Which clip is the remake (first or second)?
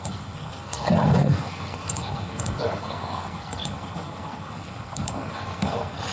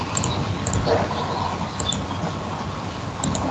first